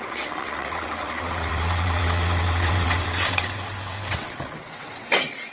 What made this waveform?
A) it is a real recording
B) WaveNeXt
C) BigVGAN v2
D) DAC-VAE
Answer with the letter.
B